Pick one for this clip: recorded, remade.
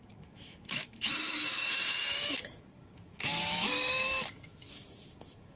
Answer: remade